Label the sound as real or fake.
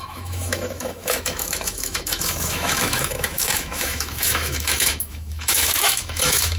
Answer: fake